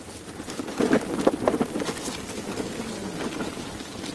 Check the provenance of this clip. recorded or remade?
recorded